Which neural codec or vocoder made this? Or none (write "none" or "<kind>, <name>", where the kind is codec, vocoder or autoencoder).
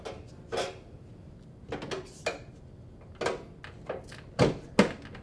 none